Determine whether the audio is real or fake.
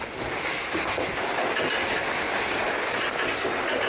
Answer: real